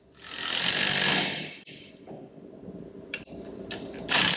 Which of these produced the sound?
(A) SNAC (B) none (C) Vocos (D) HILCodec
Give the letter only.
B